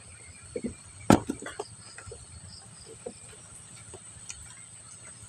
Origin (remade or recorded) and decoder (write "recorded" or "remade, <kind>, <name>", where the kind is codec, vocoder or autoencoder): recorded